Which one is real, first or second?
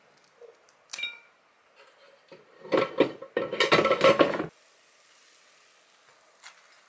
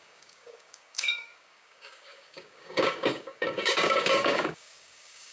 first